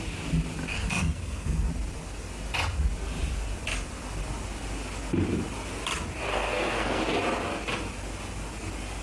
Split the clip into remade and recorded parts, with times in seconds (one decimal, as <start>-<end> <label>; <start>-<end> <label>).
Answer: 0.0-0.7 recorded; 0.7-1.7 remade; 1.7-6.3 recorded; 6.3-7.0 remade; 7.0-9.0 recorded